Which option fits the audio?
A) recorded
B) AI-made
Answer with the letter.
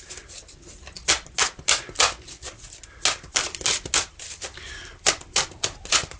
A